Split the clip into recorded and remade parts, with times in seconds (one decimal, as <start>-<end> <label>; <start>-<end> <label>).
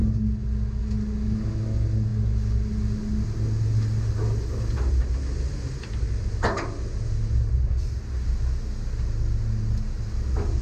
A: 0.0-10.6 recorded